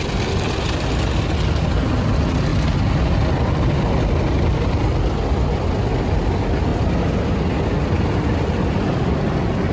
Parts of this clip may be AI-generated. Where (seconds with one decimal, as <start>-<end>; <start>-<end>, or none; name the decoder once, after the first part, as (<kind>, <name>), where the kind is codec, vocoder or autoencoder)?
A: none